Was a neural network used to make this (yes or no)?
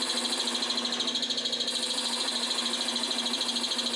no